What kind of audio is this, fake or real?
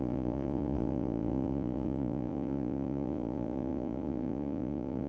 fake